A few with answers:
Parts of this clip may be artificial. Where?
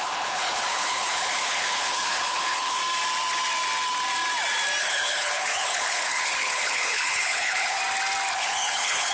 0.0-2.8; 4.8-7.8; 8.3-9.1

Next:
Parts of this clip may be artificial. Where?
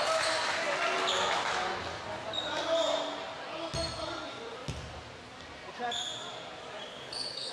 6.9-7.5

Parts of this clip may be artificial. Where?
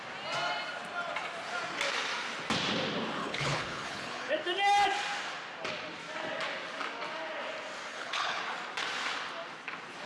3.2-4.3; 7.9-8.4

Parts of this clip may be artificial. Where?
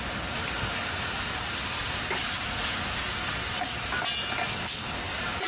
4.6-5.1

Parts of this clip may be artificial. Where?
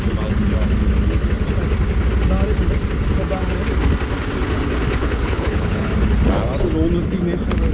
5.0-5.9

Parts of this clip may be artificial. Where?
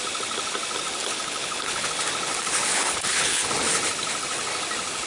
1.0-1.9; 2.7-3.5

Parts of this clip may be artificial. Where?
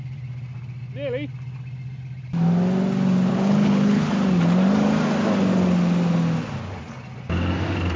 3.3-4.1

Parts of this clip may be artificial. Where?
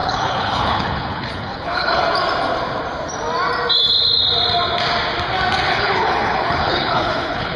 0.0-2.0; 5.7-7.6